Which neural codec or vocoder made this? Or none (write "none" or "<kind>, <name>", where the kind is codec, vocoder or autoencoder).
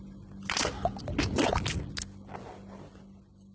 none